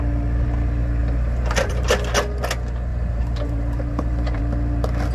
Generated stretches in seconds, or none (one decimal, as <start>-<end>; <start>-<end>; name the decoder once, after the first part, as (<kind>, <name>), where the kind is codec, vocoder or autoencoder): 1.0-1.9 (vocoder, BigVGAN v2); 2.9-4.4